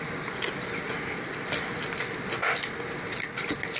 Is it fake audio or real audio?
real